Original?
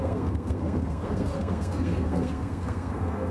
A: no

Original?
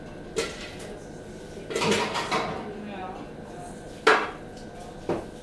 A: yes